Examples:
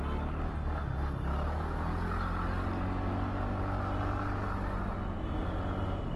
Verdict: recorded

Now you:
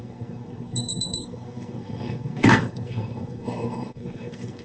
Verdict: remade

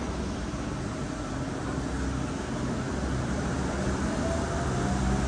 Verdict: recorded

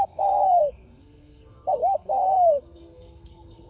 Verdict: remade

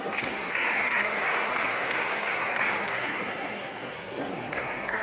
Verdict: remade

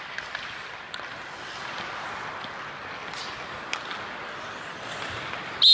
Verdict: recorded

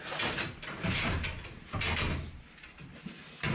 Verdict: recorded